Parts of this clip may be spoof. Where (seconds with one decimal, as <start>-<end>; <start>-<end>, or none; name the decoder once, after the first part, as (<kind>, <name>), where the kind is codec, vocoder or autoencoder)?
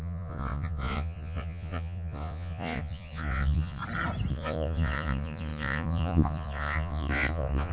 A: 0.0-3.8 (vocoder, Vocos); 4.3-7.7